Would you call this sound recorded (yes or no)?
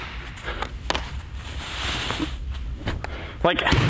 yes